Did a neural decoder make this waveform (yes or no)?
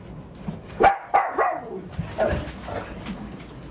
no